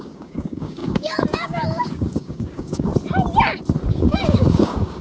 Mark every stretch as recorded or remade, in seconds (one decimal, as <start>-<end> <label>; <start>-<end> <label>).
0.0-2.9 remade; 2.9-3.9 recorded; 3.9-5.0 remade